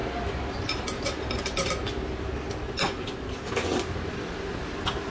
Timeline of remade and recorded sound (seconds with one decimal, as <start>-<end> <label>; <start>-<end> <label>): 0.0-5.1 recorded